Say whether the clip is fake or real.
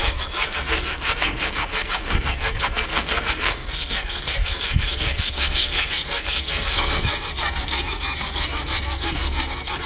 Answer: fake